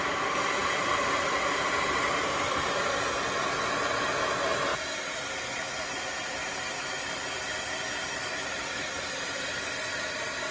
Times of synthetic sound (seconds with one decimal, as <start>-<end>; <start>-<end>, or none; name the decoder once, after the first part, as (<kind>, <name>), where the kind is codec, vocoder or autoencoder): 0.6-2.8 (vocoder, BigVGAN v2); 4.7-5.9; 8.2-10.5